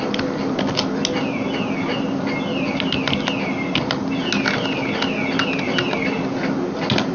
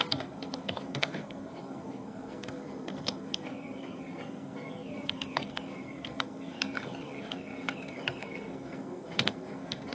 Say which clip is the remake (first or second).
second